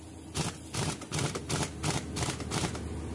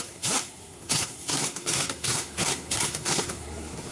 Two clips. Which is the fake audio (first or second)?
second